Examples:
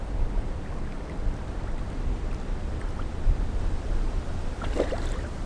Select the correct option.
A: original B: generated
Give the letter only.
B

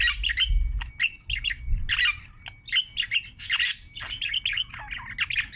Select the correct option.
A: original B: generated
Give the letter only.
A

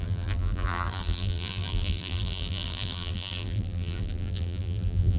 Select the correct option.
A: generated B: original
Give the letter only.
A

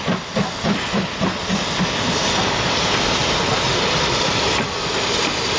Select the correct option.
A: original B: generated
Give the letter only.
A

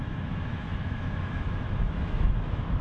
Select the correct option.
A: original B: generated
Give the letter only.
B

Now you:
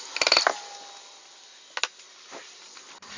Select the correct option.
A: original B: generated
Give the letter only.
A